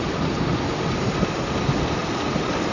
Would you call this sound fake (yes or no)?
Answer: no